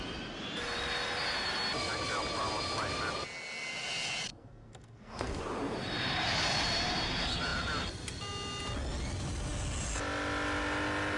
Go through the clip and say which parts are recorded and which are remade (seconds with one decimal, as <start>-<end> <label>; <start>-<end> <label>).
0.0-4.3 recorded; 4.3-5.4 remade; 5.4-11.2 recorded